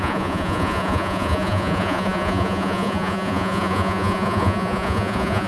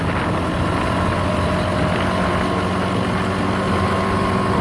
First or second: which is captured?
second